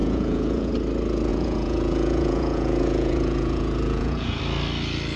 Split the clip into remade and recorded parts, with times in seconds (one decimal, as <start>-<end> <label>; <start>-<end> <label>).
0.0-0.7 remade; 0.7-1.3 recorded; 1.3-4.4 remade; 4.4-5.2 recorded